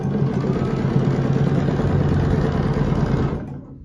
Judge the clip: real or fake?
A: real